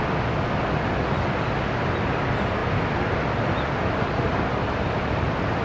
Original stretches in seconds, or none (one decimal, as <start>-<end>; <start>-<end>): 0.0-5.6